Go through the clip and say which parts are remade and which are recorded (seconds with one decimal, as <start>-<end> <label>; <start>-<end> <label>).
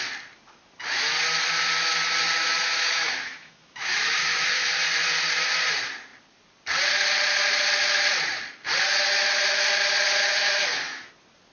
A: 0.0-2.6 recorded; 2.6-4.7 remade; 4.7-10.2 recorded; 10.2-11.1 remade; 11.1-11.5 recorded